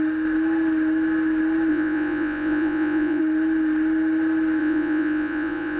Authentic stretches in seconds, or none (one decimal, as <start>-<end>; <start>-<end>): 0.0-1.7; 3.2-4.6